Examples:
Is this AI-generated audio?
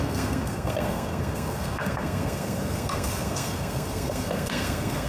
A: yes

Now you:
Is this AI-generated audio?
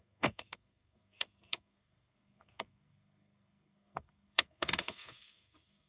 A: yes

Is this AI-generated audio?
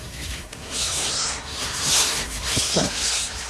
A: yes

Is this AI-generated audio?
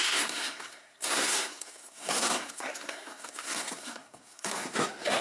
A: yes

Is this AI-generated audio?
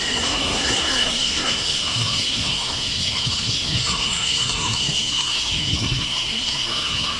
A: yes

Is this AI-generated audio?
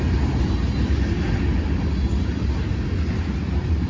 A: no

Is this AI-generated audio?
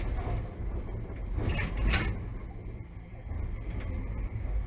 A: no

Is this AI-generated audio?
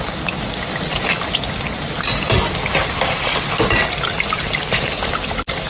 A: no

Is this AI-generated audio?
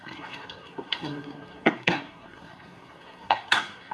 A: yes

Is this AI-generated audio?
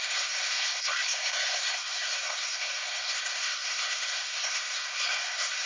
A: yes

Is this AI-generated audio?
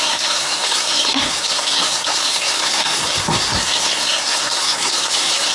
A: yes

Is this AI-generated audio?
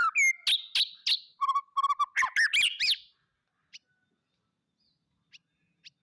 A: no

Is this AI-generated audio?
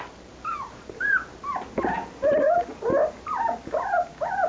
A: no